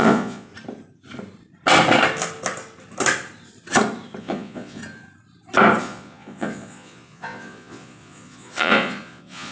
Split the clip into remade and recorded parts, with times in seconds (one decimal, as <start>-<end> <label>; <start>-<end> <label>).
0.0-0.5 remade; 0.5-4.2 recorded; 4.2-4.8 remade; 4.8-5.8 recorded; 5.8-9.5 remade